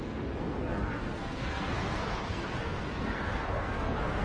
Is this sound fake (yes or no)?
yes